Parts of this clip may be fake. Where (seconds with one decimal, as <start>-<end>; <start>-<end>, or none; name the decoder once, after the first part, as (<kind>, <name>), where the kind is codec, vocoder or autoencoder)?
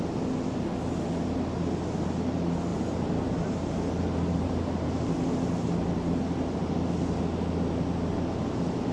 2.7-5.1 (vocoder, BigVGAN v2)